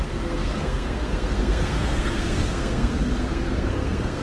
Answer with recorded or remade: remade